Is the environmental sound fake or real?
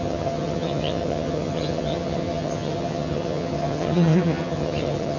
fake